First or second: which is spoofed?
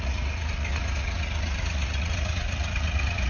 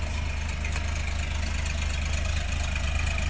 first